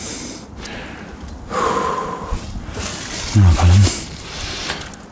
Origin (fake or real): real